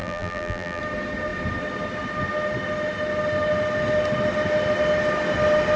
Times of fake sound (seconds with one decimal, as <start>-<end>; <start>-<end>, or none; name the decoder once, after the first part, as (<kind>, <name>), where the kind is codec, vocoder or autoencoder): 0.0-0.8 (vocoder, BigVGAN v2)